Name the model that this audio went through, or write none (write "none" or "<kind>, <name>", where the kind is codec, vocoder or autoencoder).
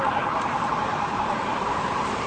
vocoder, BigVGAN v2